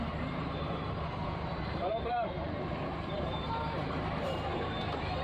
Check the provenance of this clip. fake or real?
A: fake